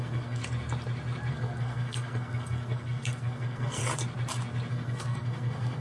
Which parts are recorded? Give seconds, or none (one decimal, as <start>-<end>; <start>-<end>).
0.4-1.3; 3.8-4.7